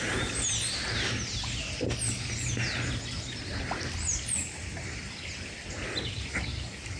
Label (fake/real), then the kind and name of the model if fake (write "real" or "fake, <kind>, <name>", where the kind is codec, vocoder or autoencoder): real